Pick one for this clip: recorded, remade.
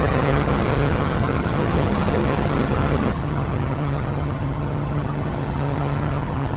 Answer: remade